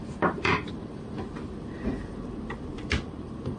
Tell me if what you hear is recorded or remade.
remade